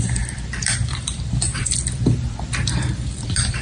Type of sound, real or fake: fake